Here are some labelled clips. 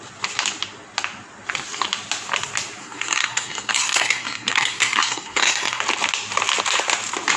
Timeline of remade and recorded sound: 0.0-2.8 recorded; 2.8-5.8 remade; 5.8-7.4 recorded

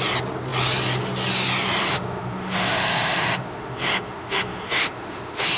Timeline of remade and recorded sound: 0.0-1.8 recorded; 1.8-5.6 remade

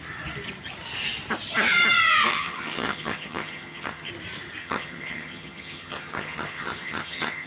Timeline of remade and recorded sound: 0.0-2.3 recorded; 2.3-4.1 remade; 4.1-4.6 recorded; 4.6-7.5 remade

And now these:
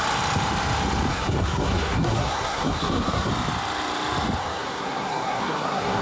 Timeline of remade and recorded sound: 0.0-1.1 recorded; 1.1-3.3 remade; 3.3-4.4 recorded; 4.4-6.0 remade

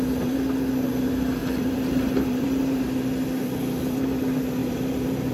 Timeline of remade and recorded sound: 0.0-1.4 recorded; 1.4-3.0 remade; 3.0-4.6 recorded; 4.6-5.3 remade

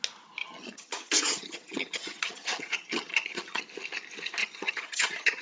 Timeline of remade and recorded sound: 0.0-0.4 recorded; 0.4-3.6 remade; 3.6-4.4 recorded; 4.4-5.4 remade

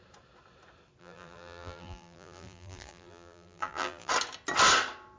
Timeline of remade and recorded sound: 0.0-1.0 recorded; 1.0-4.1 remade; 4.1-5.2 recorded